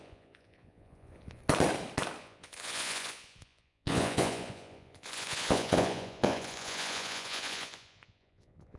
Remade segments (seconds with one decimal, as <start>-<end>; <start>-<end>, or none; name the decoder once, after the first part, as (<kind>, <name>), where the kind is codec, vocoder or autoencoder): 0.0-1.4 (vocoder, Vocos); 2.2-8.8